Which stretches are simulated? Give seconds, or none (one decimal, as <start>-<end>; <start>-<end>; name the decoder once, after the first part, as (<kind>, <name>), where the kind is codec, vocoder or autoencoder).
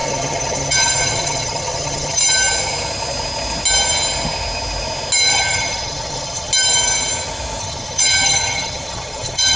0.0-2.2 (vocoder, HiFi-GAN); 5.3-6.5; 7.6-9.6